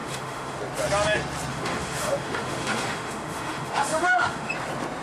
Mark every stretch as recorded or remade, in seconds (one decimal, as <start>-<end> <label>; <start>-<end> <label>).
0.0-0.6 remade; 0.6-1.5 recorded; 1.5-4.5 remade; 4.5-5.0 recorded